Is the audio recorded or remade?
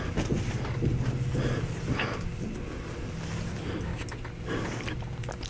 remade